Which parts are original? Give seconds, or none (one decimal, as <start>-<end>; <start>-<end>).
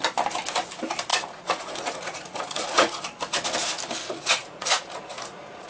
0.0-1.1; 3.0-4.4